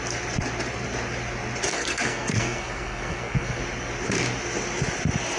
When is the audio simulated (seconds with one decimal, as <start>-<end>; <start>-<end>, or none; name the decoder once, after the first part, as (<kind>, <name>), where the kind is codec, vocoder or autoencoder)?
1.7-3.6 (codec, SNAC)